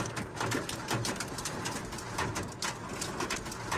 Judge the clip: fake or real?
real